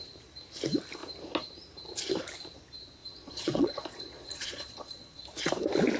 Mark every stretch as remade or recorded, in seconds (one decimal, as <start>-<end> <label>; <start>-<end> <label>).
0.0-3.0 recorded; 3.0-5.2 remade; 5.2-6.0 recorded